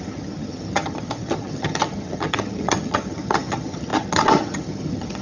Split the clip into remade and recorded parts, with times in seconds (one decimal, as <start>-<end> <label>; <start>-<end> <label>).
0.0-5.2 remade